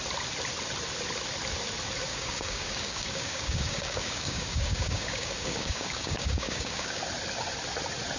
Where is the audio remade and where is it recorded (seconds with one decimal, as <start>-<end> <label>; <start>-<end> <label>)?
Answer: 0.0-2.1 recorded; 2.1-7.0 remade; 7.0-8.2 recorded